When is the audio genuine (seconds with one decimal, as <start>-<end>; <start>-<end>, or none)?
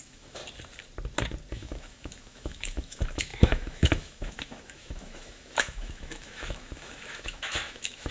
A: 0.4-1.5